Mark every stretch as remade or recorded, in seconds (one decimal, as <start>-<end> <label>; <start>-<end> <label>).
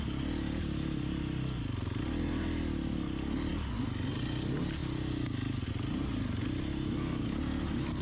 0.0-8.0 recorded